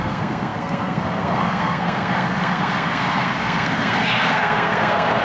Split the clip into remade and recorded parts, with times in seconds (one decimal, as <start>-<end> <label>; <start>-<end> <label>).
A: 0.0-5.2 remade

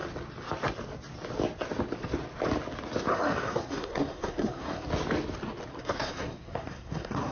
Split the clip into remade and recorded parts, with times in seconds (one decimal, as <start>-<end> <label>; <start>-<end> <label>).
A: 0.0-3.1 recorded; 3.1-4.9 remade; 4.9-5.7 recorded; 5.7-7.3 remade

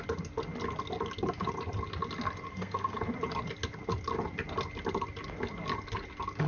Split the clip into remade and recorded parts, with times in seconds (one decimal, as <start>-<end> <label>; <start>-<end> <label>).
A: 0.0-2.5 recorded; 2.5-3.0 remade; 3.0-6.5 recorded

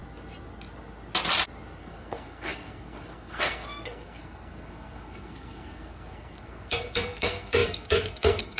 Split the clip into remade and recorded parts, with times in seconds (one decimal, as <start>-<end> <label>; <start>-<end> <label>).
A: 0.0-1.8 recorded; 1.8-8.6 remade

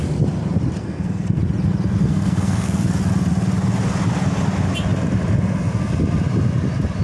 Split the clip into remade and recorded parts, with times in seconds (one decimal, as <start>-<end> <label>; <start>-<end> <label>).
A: 0.0-0.8 recorded; 0.8-1.4 remade; 1.4-2.0 recorded; 2.0-2.9 remade; 2.9-7.0 recorded

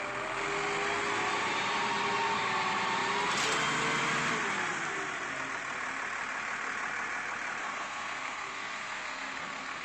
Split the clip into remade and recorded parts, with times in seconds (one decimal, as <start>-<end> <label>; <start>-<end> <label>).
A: 0.0-7.6 recorded; 7.6-9.8 remade